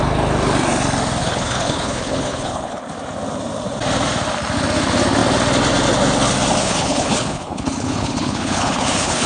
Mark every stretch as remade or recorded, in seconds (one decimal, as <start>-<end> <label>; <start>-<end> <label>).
0.0-1.2 recorded; 1.2-2.8 remade; 2.8-6.6 recorded; 6.6-9.3 remade